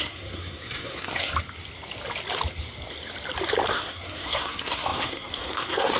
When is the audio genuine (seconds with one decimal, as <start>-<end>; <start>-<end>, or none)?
1.3-3.7